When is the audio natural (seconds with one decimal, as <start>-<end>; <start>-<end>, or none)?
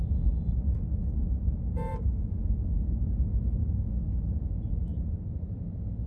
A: 0.0-3.3; 3.9-4.9; 5.6-6.1